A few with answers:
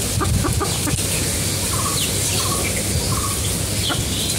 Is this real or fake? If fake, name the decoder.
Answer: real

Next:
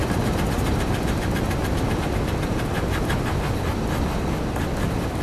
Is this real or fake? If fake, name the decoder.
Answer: real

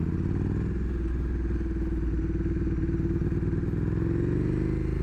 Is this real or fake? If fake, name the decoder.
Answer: real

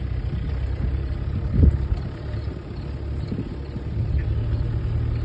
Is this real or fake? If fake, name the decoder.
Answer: real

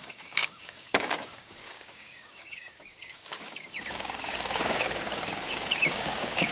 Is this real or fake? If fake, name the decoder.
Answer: fake, codec, DAC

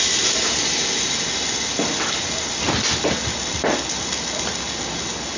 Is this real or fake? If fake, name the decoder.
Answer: real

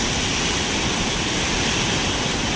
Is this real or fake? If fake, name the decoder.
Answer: real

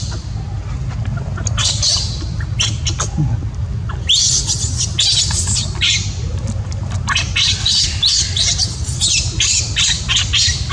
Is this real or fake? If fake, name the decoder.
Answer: real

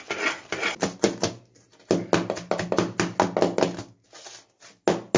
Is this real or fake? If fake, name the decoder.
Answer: real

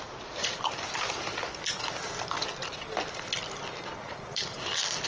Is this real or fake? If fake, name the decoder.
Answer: real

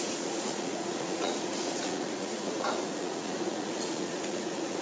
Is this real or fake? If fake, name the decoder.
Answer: fake, vocoder, Vocos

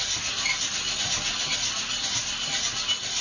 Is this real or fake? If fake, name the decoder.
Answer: real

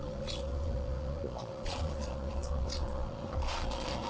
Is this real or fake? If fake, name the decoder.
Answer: fake, vocoder, Vocos